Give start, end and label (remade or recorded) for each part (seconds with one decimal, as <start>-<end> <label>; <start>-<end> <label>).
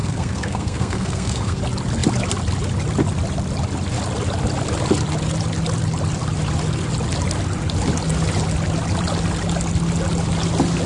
0.0-1.6 remade; 1.6-10.9 recorded